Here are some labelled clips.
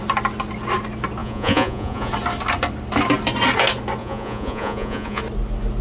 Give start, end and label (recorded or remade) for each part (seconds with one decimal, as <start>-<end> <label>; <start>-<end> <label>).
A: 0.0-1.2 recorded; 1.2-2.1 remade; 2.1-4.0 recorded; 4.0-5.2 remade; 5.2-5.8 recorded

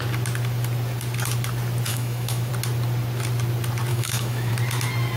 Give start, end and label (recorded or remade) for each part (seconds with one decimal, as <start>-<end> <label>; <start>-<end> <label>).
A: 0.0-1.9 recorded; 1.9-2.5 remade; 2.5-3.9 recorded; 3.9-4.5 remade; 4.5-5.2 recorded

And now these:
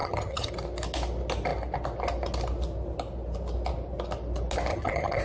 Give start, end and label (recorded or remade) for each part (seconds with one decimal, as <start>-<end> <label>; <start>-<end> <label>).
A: 0.0-0.5 remade; 0.5-4.7 recorded; 4.7-5.2 remade